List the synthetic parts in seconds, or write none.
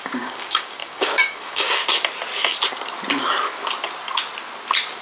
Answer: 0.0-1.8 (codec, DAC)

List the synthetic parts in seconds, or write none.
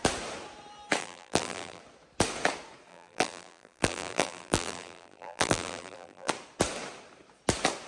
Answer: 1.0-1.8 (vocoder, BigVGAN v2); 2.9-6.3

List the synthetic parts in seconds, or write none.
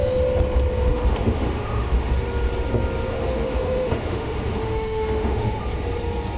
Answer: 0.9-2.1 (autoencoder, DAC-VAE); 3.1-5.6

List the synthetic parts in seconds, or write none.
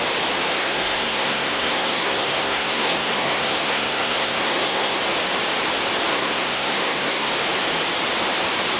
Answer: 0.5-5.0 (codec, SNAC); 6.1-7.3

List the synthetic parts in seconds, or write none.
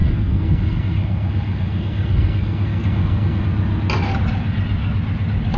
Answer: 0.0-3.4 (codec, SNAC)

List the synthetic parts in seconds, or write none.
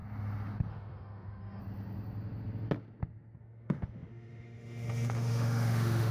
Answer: 0.7-1.6 (autoencoder, DAC-VAE); 3.4-6.1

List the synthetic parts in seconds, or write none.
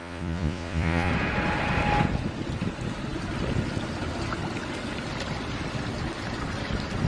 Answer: 0.0-1.1 (vocoder, Vocos)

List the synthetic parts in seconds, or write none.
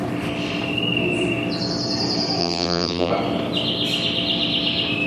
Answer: 2.4-3.1 (vocoder, BigVGAN v2)